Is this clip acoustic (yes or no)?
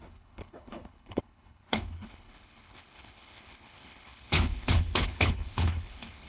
no